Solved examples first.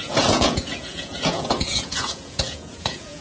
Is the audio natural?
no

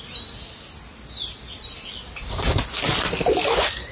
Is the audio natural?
yes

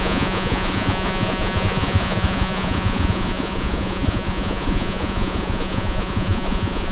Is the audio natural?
no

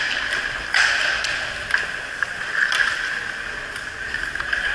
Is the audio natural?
yes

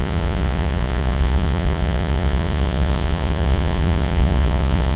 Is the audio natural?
no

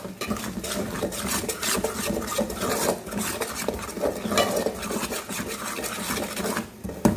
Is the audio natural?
yes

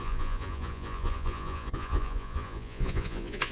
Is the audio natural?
no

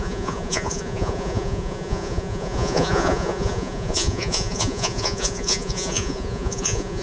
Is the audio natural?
no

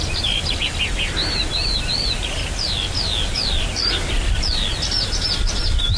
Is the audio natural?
yes